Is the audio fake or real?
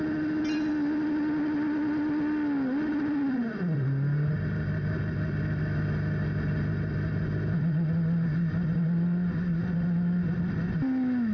real